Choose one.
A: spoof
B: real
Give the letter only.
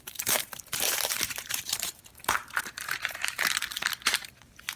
A